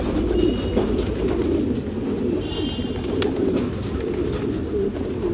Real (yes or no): yes